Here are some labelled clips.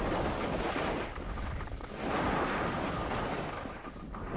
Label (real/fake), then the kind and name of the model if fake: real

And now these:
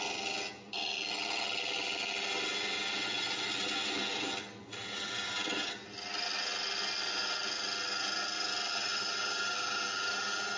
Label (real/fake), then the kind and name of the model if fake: real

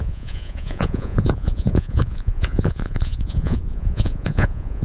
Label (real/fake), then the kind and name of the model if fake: fake, vocoder, Vocos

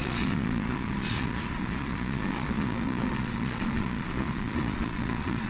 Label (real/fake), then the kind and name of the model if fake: fake, vocoder, Vocos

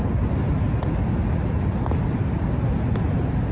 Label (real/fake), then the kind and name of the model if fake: real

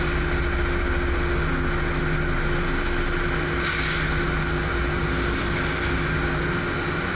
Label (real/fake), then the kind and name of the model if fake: real